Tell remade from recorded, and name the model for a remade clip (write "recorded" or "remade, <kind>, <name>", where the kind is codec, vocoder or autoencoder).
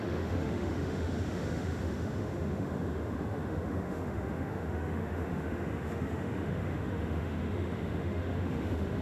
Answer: remade, autoencoder, DAC-VAE